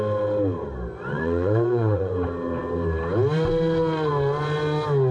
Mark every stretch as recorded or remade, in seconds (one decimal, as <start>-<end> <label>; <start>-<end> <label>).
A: 0.0-1.1 recorded; 1.1-2.1 remade; 2.1-5.1 recorded